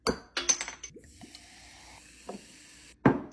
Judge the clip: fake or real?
real